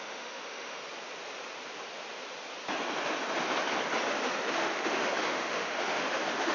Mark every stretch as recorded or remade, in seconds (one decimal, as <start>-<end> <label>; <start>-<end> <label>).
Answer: 0.0-0.8 remade; 0.8-4.5 recorded; 4.5-6.5 remade